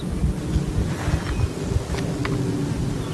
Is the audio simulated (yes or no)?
no